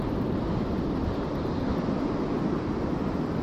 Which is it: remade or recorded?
recorded